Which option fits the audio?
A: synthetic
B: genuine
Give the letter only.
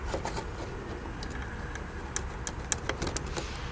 B